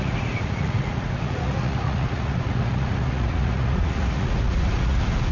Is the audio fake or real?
fake